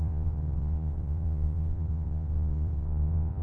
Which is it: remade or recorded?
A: remade